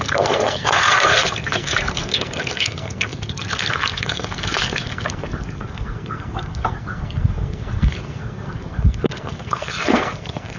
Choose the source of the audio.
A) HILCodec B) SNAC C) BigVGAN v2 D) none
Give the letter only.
B